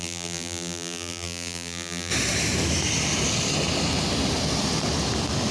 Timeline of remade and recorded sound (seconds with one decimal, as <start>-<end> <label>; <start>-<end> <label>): 0.0-2.1 remade; 2.1-5.5 recorded